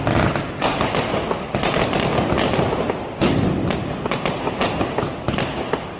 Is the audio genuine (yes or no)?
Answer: yes